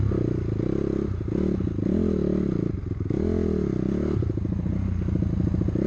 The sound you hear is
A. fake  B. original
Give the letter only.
B